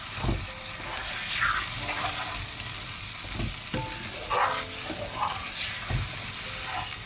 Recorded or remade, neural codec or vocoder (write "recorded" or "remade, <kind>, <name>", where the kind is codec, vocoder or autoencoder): recorded